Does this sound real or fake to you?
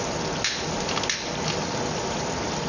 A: real